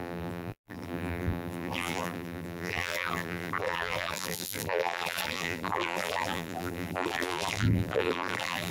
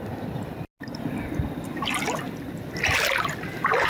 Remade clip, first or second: first